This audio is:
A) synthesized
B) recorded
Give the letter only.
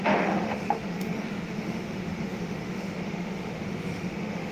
A